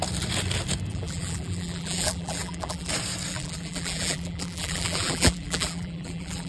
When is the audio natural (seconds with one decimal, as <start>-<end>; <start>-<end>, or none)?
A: 0.0-0.9; 2.9-3.3